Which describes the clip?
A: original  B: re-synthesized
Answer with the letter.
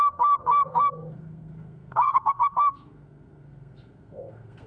B